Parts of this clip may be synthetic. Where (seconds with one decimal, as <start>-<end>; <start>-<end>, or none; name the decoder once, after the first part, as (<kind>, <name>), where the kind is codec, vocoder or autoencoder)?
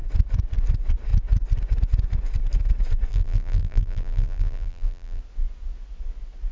3.1-5.2 (vocoder, BigVGAN v2)